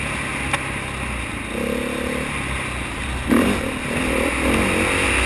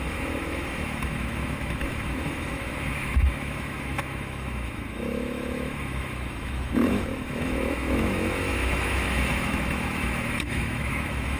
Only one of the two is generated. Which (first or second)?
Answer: second